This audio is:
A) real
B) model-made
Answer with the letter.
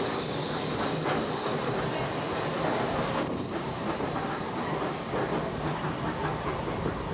A